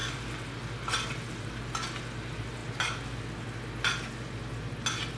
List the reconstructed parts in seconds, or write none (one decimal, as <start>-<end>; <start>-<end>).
none